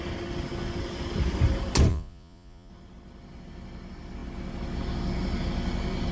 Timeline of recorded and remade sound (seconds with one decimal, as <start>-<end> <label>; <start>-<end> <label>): 0.0-1.9 recorded; 1.9-2.7 remade; 2.7-6.1 recorded

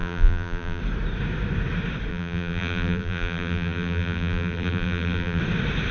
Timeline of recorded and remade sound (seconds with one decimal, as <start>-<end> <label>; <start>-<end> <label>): 0.0-0.8 remade; 0.8-2.1 recorded; 2.1-5.4 remade; 5.4-5.9 recorded

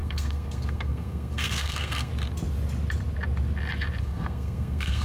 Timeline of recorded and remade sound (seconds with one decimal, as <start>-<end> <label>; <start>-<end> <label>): 0.0-2.1 remade; 2.1-4.0 recorded; 4.0-5.0 remade

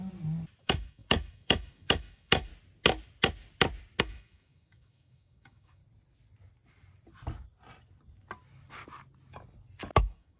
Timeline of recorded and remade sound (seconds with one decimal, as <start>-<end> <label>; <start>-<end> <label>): 0.0-0.6 recorded; 0.6-2.5 remade; 2.5-4.0 recorded; 4.0-5.8 remade; 5.8-10.0 recorded; 10.0-10.4 remade